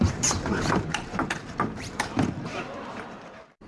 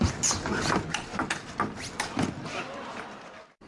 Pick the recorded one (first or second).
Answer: second